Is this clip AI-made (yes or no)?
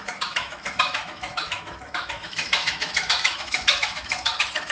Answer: yes